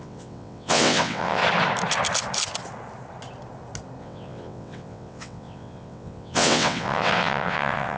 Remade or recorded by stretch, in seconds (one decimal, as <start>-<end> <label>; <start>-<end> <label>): 0.0-1.4 remade; 1.4-4.0 recorded; 4.0-8.0 remade

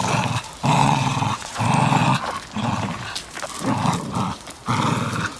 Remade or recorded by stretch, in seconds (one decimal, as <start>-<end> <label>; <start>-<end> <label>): 0.0-0.8 recorded; 0.8-1.6 remade; 1.6-5.4 recorded

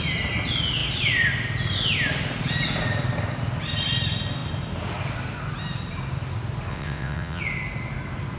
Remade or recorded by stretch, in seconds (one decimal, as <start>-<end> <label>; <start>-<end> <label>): 0.0-6.7 recorded; 6.7-7.4 remade; 7.4-8.4 recorded